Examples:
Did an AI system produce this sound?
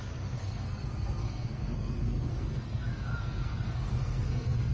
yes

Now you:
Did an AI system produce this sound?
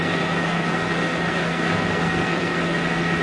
yes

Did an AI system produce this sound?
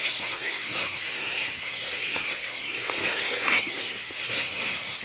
yes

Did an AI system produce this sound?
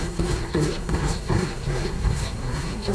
yes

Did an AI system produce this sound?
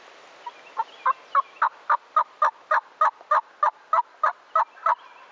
no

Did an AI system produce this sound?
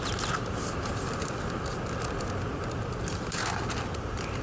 no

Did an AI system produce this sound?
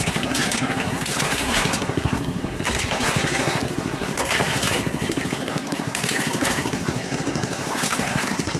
yes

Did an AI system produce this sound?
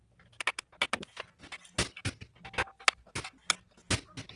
no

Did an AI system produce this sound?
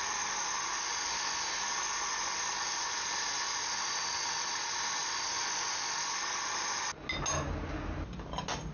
no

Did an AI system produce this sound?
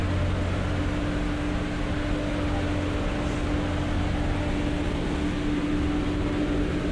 no